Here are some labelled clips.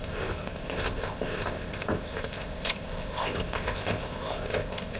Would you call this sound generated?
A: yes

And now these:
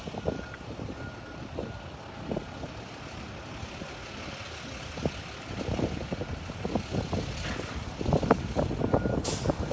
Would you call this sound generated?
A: no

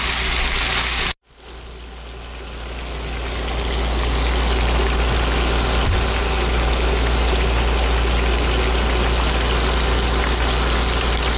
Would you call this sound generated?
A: no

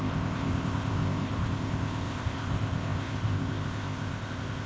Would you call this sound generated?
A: yes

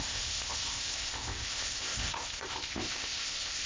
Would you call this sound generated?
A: yes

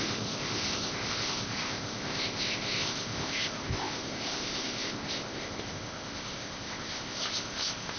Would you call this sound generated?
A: yes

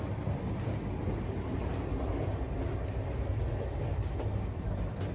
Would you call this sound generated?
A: no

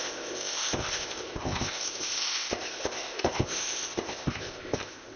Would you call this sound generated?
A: yes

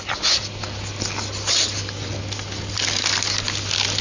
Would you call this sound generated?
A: no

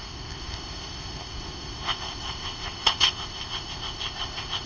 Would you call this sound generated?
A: yes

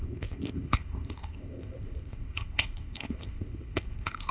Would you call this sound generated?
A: yes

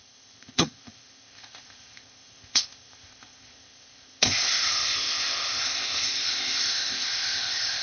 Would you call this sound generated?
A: yes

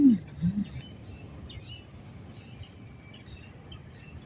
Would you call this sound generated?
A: no